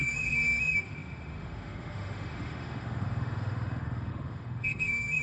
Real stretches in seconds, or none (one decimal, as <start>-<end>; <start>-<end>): none